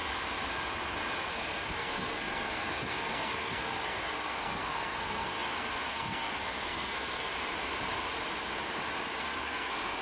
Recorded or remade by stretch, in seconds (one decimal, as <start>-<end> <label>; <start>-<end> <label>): 0.0-1.3 recorded; 1.3-7.3 remade; 7.3-9.2 recorded; 9.2-10.0 remade